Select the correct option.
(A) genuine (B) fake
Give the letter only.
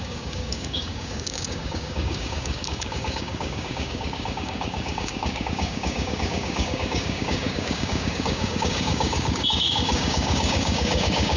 B